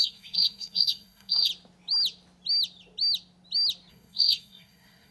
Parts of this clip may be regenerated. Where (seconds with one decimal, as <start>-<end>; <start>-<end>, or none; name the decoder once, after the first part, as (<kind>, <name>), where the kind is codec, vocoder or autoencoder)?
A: 0.0-1.5 (codec, SNAC); 3.9-5.1